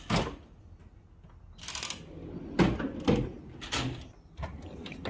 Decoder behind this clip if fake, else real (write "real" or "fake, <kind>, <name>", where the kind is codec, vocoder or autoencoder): real